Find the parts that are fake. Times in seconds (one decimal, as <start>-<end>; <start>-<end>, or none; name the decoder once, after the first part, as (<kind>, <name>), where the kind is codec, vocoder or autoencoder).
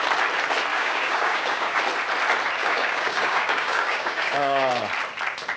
0.7-1.8 (codec, DAC); 2.6-4.7